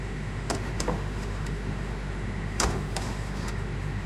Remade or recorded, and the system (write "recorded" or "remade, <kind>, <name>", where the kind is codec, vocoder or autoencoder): remade, autoencoder, DAC-VAE